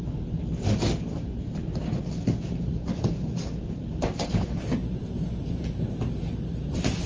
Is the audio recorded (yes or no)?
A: yes